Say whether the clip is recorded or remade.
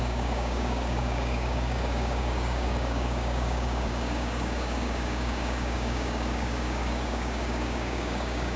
remade